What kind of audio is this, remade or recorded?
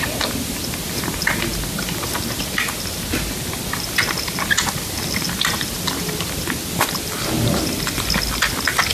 recorded